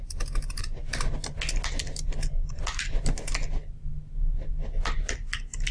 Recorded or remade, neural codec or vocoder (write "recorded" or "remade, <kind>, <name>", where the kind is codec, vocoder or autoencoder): recorded